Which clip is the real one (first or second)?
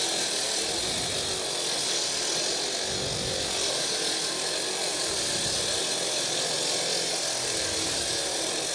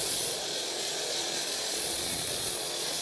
first